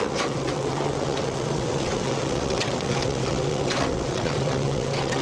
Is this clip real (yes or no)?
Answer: no